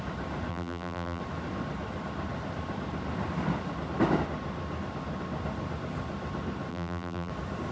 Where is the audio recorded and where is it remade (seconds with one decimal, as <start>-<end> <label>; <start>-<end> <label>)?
0.0-0.5 recorded; 0.5-1.2 remade; 1.2-6.7 recorded; 6.7-7.3 remade; 7.3-7.7 recorded